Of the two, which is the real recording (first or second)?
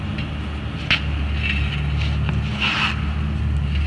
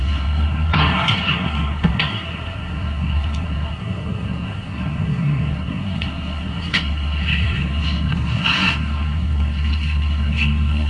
first